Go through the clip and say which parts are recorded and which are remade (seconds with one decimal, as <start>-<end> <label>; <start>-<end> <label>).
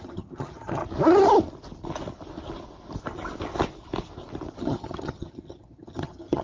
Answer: 0.0-0.8 remade; 0.8-4.6 recorded; 4.6-6.4 remade